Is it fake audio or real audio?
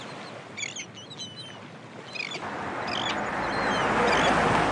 real